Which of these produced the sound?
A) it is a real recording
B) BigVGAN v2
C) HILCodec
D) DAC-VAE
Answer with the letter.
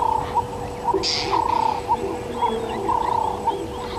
A